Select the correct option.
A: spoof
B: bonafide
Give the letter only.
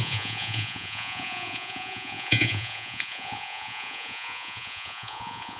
A